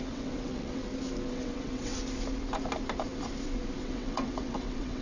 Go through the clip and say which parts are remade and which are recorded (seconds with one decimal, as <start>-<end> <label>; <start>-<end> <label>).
0.0-0.8 remade; 0.8-1.3 recorded; 1.3-1.9 remade; 1.9-3.8 recorded; 3.8-5.0 remade